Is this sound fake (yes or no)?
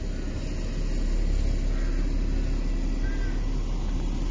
no